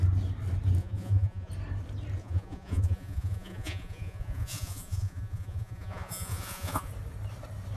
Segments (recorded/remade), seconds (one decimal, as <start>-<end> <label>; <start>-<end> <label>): 0.0-0.8 recorded; 0.8-1.5 remade; 1.5-2.2 recorded; 2.2-6.9 remade; 6.9-7.8 recorded